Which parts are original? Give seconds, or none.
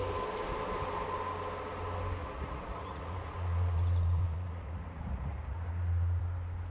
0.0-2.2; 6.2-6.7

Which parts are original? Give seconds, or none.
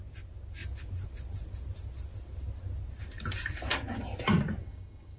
0.0-4.6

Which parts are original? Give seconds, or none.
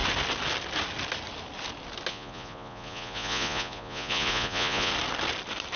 0.0-2.1; 4.9-5.8